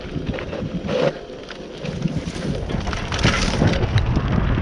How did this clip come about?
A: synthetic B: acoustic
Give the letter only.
B